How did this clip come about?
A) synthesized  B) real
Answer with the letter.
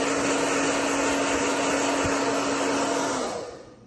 B